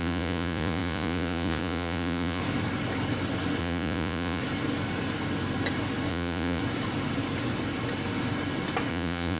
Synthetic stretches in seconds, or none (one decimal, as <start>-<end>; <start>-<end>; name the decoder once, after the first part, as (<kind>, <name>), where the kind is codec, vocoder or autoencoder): 0.0-2.4 (vocoder, Vocos); 3.6-4.4; 6.1-6.6; 8.9-9.4